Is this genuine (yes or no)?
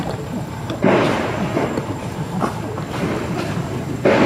no